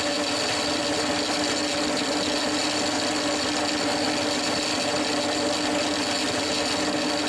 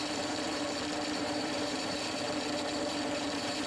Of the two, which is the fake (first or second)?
second